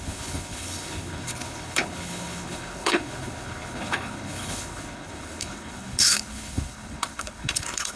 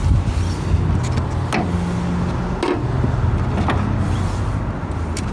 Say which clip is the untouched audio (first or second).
second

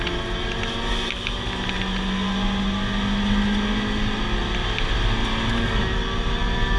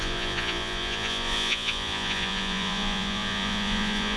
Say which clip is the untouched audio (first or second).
first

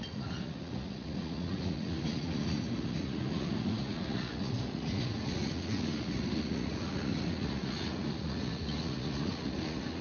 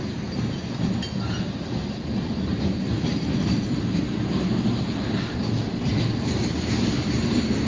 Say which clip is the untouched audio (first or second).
second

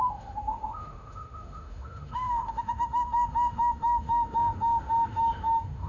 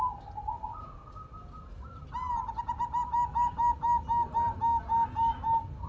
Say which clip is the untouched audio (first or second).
second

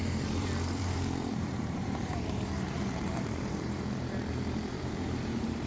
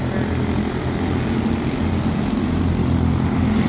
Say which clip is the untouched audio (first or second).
second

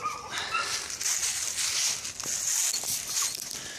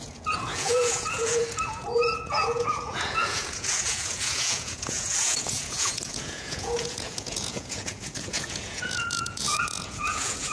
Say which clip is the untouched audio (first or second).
first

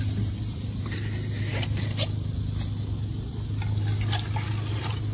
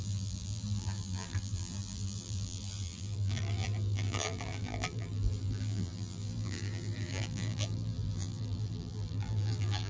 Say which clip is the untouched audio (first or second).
first